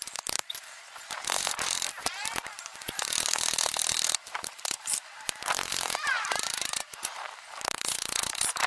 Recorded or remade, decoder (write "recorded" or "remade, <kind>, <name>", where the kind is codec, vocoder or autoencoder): remade, vocoder, BigVGAN v2